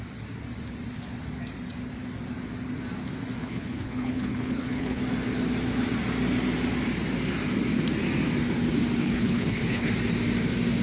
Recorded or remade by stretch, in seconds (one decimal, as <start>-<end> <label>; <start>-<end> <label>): 0.0-3.4 recorded; 3.4-5.0 remade; 5.0-9.0 recorded; 9.0-9.9 remade; 9.9-10.8 recorded